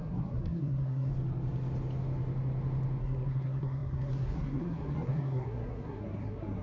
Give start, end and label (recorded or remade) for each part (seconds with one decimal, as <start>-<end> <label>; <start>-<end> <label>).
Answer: 0.0-1.1 remade; 1.1-3.0 recorded; 3.0-6.6 remade